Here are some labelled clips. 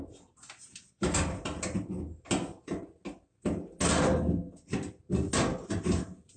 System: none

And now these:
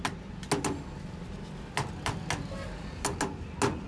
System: none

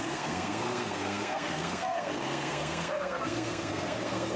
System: codec, SNAC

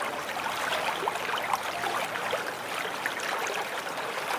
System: none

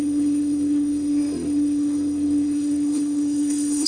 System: codec, SNAC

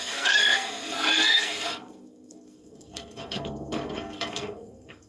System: codec, SNAC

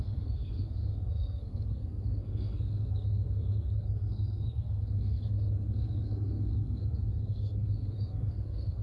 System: codec, SNAC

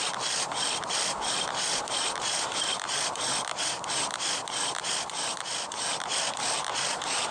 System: none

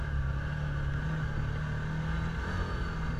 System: none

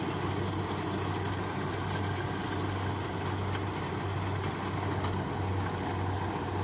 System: none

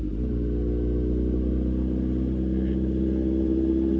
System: none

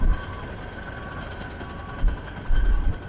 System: none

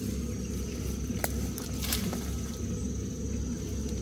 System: none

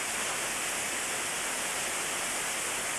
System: none